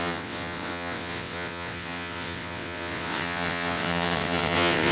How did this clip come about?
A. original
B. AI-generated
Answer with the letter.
B